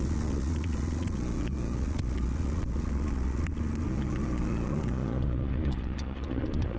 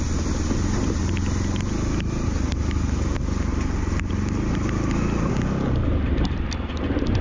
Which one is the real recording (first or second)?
second